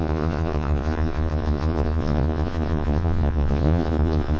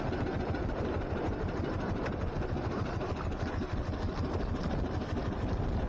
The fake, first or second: first